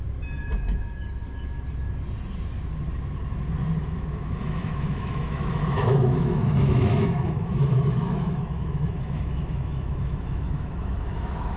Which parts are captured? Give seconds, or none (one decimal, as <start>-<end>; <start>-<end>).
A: 0.0-3.8